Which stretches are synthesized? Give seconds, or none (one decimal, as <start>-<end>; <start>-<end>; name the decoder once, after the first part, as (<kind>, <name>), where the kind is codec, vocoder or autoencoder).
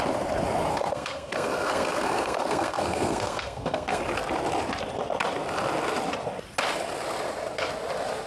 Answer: 0.7-4.0 (codec, SNAC)